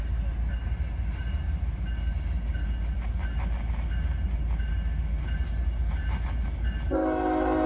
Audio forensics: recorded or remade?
recorded